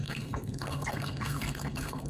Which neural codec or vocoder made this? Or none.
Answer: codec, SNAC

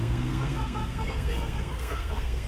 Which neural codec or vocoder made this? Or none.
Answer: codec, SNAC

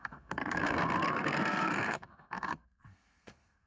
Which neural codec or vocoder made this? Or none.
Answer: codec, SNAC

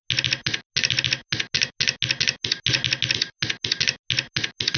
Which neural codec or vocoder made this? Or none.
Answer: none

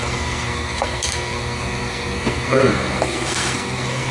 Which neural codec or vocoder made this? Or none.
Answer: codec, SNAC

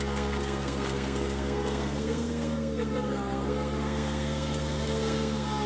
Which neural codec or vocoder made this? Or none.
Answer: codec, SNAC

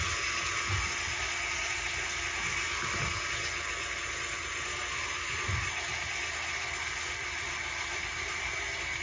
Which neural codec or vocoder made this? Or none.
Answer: none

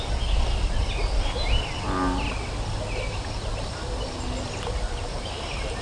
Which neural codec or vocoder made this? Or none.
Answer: none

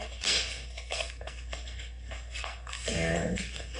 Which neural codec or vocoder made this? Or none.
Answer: codec, SNAC